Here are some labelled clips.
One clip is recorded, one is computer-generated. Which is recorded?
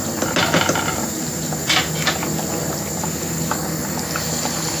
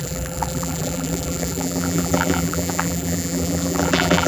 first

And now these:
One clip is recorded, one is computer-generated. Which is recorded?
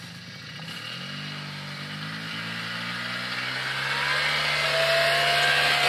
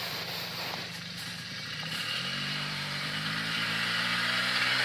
first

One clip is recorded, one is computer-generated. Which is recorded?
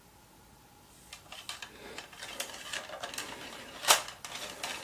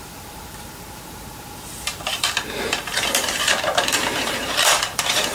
first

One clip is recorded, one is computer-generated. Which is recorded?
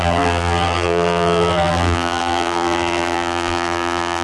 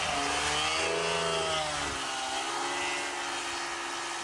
second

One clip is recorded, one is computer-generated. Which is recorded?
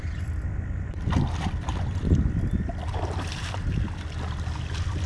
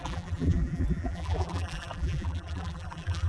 first